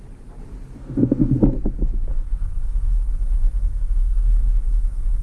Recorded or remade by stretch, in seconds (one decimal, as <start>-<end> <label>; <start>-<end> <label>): 0.0-0.8 recorded; 0.8-1.3 remade; 1.3-2.1 recorded; 2.1-5.2 remade